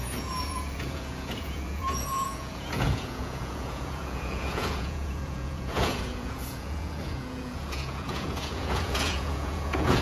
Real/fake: fake